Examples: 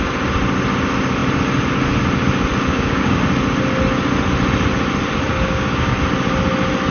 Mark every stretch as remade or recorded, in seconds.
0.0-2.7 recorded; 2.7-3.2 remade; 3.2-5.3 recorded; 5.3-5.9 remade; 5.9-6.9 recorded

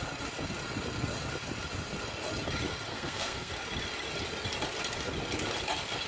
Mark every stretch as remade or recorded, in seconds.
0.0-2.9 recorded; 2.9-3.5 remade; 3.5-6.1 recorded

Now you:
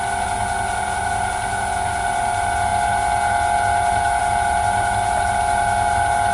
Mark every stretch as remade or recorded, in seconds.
0.0-6.3 recorded

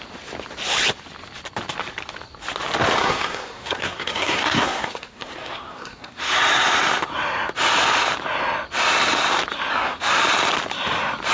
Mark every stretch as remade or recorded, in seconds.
0.0-3.0 recorded; 3.0-6.2 remade; 6.2-9.7 recorded; 9.7-10.2 remade; 10.2-11.3 recorded

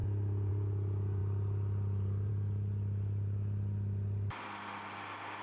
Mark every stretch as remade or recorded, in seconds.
0.0-5.4 recorded

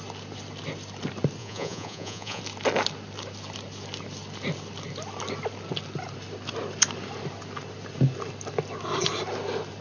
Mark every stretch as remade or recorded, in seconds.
0.0-1.4 recorded; 1.4-2.4 remade; 2.4-9.8 recorded